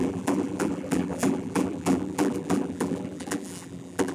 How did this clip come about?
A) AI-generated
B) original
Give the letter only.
A